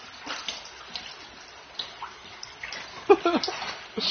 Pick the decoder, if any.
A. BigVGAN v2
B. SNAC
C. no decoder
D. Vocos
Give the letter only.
C